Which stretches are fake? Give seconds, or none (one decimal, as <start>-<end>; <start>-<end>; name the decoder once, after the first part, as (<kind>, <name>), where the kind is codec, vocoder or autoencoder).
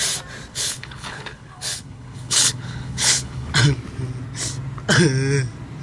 0.5-3.5 (codec, HILCodec)